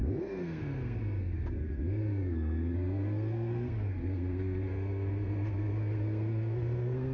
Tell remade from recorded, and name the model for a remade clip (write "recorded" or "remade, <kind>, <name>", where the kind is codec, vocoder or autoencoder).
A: remade, codec, SNAC